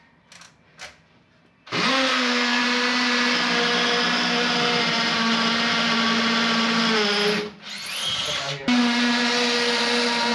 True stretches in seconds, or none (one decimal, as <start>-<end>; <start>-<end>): 0.0-2.1; 2.6-10.3

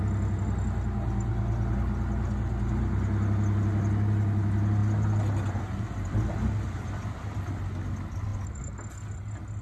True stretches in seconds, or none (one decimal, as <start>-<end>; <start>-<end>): 0.0-9.6

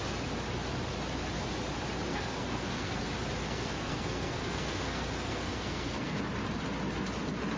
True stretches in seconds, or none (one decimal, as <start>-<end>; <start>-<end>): 0.0-2.1; 3.0-3.4; 6.2-7.6

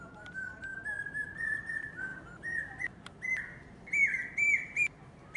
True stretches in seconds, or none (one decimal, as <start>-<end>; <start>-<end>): 0.7-1.6; 2.1-5.4

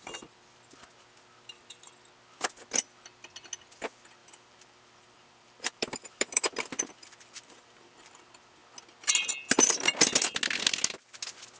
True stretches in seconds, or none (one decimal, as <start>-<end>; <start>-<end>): 0.0-4.2; 8.2-11.6